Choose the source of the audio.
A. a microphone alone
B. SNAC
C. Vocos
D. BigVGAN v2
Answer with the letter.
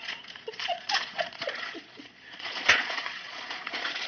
C